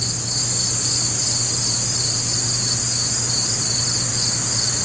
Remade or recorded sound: recorded